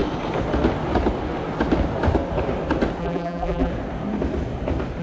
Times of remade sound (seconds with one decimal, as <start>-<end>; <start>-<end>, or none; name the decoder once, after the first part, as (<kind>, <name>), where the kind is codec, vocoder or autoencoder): 3.0-3.7 (vocoder, BigVGAN v2)